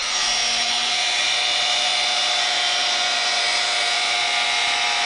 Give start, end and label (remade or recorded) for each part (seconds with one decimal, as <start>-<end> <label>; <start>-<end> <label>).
0.0-5.1 remade